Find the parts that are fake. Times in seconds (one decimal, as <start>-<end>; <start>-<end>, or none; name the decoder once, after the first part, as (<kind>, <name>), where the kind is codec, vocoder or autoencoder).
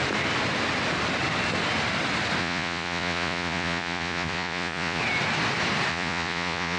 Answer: 2.4-5.0 (vocoder, Vocos); 5.9-6.8